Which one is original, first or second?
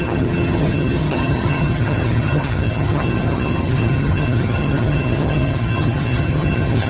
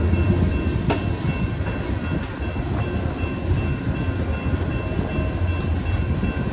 second